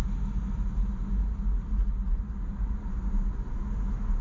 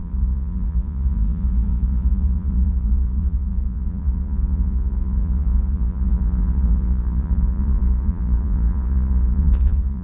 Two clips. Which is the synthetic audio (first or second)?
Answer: second